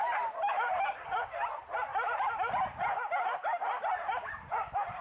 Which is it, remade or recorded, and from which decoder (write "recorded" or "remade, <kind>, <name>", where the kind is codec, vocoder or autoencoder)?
recorded